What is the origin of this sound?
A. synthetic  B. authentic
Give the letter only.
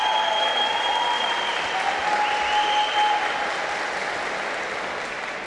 B